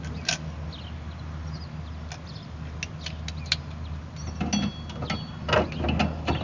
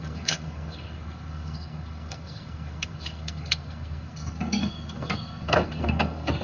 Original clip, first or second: first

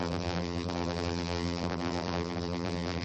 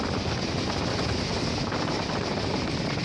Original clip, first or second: second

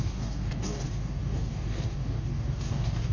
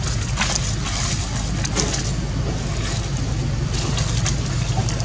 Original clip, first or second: second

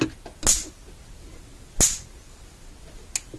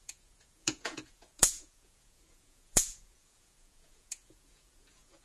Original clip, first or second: first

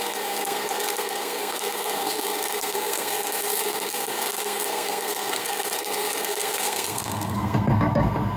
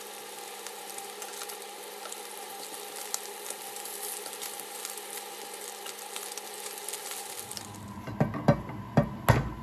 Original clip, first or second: second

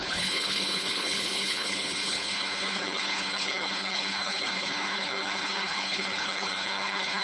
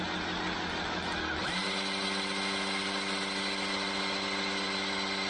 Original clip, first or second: second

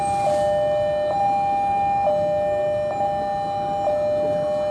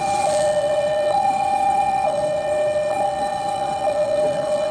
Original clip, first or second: first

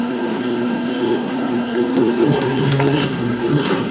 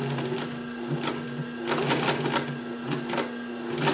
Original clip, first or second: second